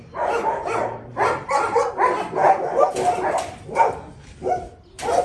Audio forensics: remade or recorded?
recorded